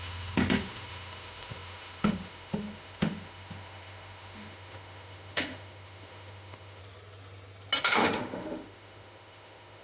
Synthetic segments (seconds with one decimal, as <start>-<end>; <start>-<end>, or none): 0.0-6.8; 7.8-9.8